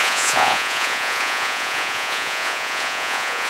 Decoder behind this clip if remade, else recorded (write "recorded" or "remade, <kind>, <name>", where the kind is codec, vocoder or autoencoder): remade, vocoder, Vocos